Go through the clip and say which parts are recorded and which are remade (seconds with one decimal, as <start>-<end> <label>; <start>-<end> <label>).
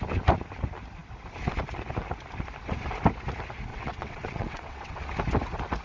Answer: 0.0-3.7 recorded; 3.7-5.0 remade; 5.0-5.8 recorded